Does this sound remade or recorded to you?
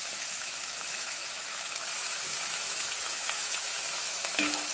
remade